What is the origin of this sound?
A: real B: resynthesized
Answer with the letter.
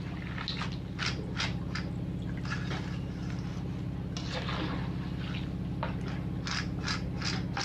A